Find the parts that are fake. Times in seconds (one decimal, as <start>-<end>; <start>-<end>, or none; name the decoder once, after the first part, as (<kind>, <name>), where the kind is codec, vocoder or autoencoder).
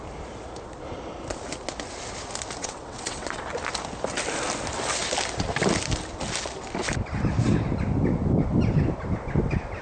2.6-3.4 (vocoder, WaveNeXt)